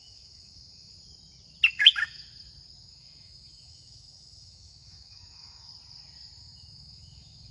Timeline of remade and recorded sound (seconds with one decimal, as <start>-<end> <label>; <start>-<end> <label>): 0.0-0.9 remade; 0.9-1.7 recorded; 1.7-2.2 remade; 2.2-2.8 recorded; 2.8-5.7 remade; 5.7-6.4 recorded; 6.4-7.5 remade